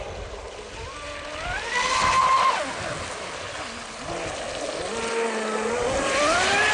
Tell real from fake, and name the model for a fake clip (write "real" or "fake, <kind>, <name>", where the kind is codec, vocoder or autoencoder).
real